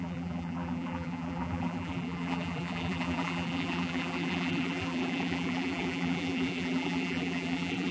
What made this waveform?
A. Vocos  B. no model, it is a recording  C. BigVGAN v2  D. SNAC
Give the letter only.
C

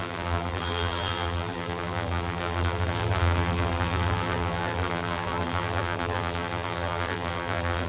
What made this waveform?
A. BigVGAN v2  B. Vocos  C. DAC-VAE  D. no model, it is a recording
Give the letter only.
A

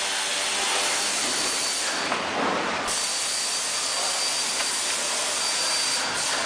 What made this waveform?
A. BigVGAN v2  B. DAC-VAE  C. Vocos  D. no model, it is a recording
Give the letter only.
D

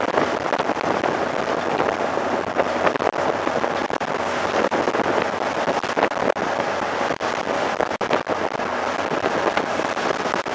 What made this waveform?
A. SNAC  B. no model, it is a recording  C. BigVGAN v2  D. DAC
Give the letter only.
B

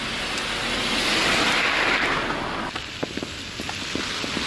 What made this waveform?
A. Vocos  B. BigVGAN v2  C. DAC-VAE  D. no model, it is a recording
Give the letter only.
D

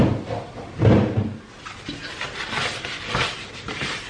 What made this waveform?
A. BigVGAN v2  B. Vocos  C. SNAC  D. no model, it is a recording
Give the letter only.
D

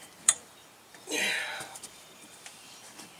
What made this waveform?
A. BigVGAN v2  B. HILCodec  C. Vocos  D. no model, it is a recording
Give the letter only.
A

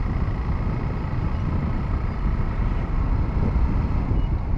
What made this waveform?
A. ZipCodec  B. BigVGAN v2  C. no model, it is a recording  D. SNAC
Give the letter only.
C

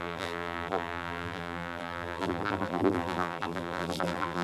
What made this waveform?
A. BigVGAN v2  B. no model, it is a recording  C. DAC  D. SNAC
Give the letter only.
A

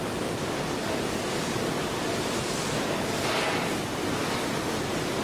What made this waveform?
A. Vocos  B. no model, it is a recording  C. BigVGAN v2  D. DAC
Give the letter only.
B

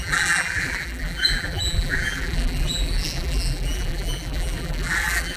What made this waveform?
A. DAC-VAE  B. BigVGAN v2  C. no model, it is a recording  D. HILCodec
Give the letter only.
B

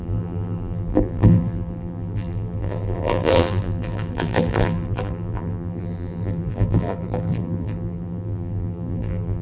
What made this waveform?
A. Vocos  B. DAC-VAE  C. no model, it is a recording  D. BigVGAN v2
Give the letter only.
D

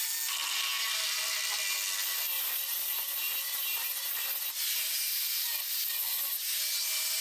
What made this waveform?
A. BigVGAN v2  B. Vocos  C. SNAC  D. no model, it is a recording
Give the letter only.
D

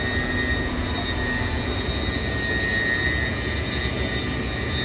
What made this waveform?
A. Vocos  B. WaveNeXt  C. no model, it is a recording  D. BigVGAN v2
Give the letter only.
C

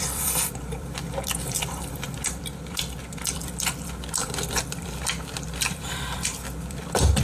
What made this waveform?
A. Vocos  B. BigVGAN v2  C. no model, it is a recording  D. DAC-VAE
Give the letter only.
B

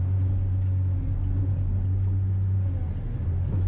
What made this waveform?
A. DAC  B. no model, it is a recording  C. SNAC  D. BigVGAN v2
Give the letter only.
B